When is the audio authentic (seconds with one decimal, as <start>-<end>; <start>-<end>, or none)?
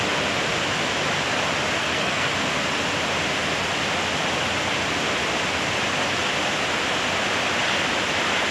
0.0-1.8; 2.3-8.5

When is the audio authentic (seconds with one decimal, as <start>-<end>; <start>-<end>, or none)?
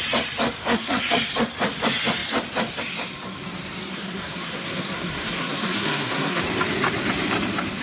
0.0-0.6; 1.1-3.9; 6.4-7.8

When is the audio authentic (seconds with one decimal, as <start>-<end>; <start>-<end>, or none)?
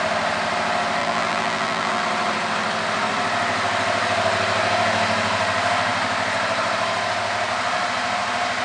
0.0-1.0; 2.0-8.6